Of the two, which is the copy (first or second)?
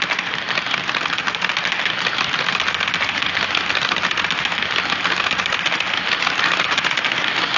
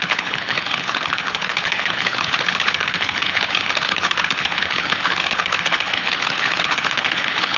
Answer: second